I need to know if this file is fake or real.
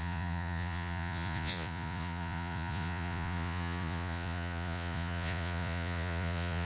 fake